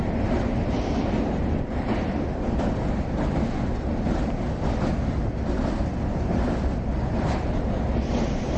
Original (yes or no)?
yes